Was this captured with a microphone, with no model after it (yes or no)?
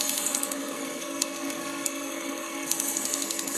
no